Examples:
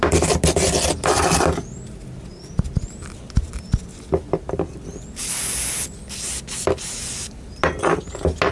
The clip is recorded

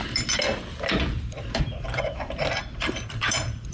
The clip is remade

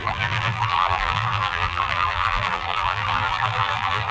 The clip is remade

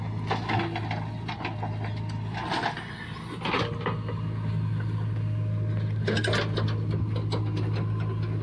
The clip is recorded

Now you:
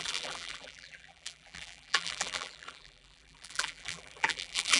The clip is remade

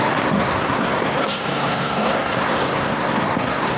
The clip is remade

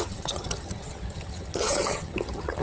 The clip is remade